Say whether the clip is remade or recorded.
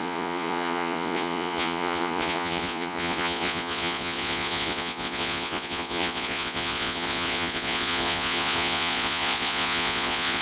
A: remade